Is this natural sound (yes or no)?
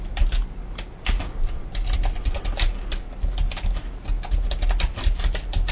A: yes